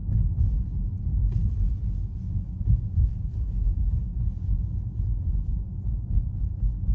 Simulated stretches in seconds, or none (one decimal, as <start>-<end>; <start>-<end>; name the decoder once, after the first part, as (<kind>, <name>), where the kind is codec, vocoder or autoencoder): none